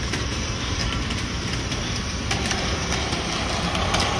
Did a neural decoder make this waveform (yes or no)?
yes